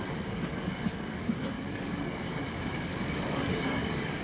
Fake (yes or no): yes